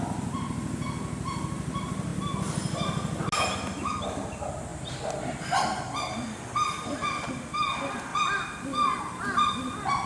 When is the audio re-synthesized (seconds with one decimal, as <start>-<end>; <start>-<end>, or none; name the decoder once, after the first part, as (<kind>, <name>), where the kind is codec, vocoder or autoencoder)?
none